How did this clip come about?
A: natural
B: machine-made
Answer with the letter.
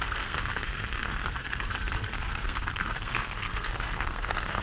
B